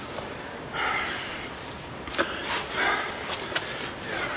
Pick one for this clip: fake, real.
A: fake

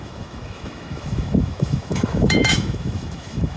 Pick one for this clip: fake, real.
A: fake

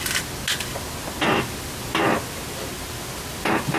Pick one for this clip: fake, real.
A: real